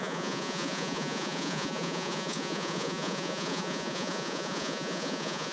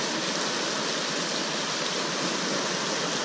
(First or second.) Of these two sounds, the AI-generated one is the first